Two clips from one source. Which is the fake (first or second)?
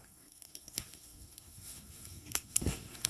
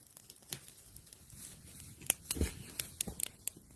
first